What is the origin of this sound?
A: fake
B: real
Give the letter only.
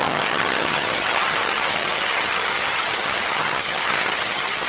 A